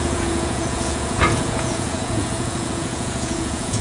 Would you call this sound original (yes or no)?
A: no